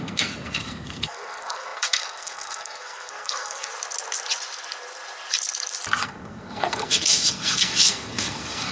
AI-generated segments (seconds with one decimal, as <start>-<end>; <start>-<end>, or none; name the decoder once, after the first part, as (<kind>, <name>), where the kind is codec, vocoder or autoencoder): 0.0-3.7 (codec, SNAC); 6.0-8.7